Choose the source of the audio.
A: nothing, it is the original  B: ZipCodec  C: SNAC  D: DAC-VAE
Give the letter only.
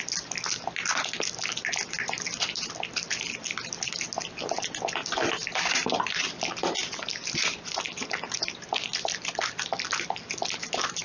A